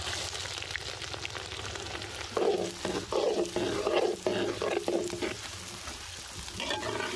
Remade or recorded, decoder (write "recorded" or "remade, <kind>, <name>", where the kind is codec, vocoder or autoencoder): recorded